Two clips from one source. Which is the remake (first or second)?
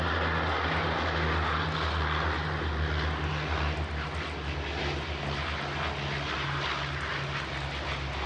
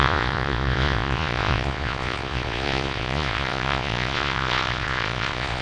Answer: second